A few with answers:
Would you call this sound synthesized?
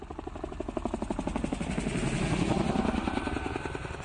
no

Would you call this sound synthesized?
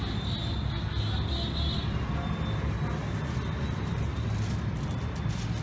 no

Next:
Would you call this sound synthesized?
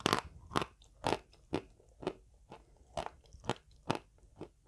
no